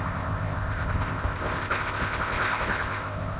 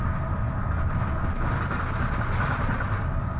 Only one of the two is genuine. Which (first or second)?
second